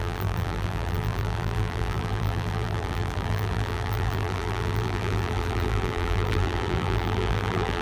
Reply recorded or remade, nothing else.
remade